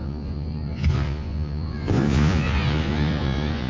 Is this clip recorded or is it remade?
remade